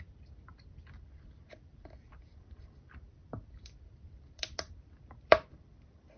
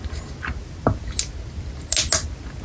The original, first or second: second